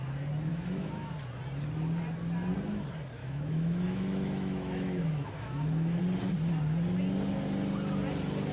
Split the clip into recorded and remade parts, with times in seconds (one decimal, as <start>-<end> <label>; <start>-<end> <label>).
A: 0.0-0.5 recorded; 0.5-1.1 remade; 1.1-3.2 recorded; 3.2-6.0 remade; 6.0-8.5 recorded